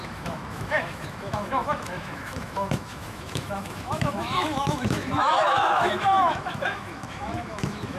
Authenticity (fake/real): fake